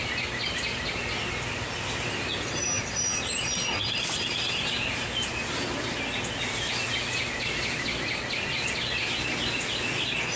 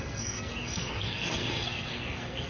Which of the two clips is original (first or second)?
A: first